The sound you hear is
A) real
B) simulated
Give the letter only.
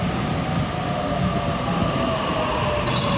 A